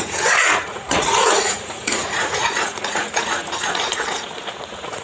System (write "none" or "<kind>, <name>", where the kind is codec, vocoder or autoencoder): vocoder, Vocos